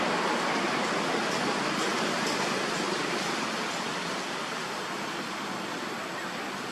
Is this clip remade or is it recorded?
recorded